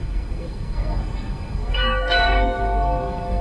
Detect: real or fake fake